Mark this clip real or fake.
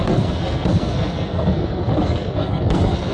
fake